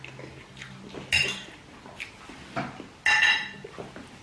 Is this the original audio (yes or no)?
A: yes